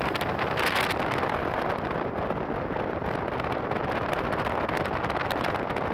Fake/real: real